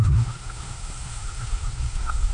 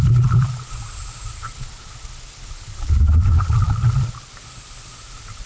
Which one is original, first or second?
second